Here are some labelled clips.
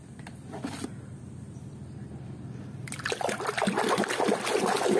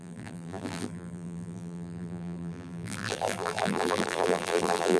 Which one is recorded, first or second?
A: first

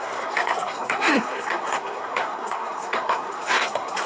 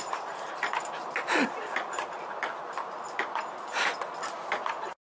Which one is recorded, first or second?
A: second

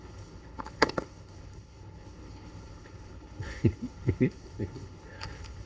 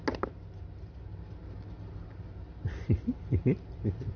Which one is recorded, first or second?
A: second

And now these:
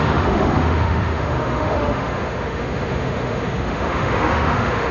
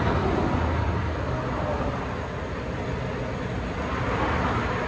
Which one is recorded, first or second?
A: second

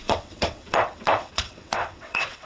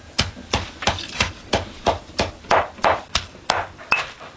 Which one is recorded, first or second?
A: second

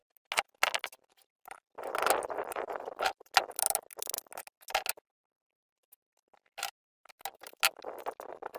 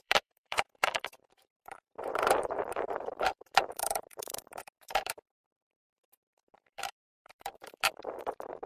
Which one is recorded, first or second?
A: first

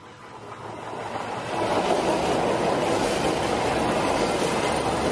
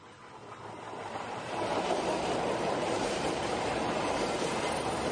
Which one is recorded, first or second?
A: first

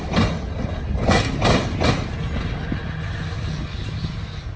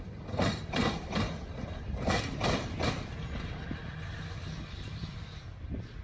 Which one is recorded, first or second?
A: first